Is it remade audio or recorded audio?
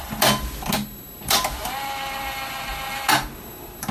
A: recorded